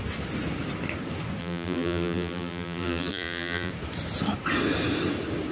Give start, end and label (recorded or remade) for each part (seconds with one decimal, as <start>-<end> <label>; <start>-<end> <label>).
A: 0.0-1.4 recorded; 1.4-3.7 remade; 3.7-5.5 recorded